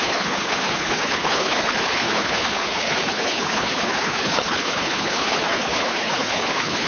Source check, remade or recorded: remade